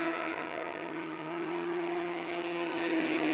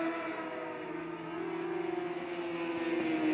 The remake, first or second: first